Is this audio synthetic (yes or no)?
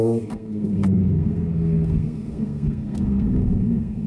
yes